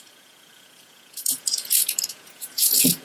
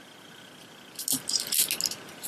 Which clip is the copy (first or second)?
first